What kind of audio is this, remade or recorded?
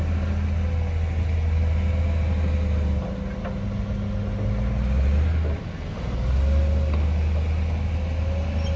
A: recorded